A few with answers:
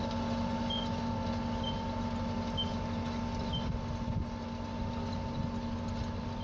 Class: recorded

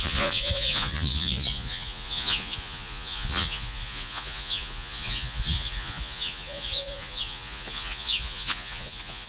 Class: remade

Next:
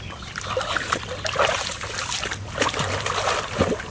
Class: recorded